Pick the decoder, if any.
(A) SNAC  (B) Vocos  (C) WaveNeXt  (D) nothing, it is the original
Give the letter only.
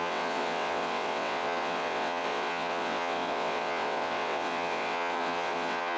C